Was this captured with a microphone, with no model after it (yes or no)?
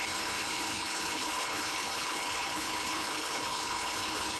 no